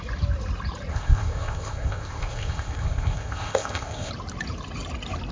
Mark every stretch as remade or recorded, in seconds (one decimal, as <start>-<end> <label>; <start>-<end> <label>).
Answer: 0.0-0.9 recorded; 0.9-4.1 remade; 4.1-5.3 recorded